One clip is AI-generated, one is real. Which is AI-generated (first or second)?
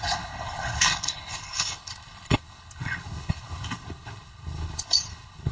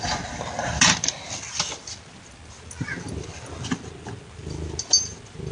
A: first